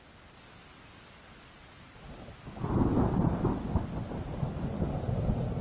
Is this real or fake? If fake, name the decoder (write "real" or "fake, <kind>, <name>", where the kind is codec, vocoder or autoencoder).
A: real